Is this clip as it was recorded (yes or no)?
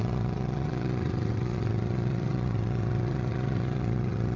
no